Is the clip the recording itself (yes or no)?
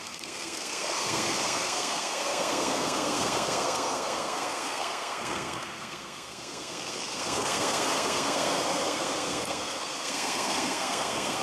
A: no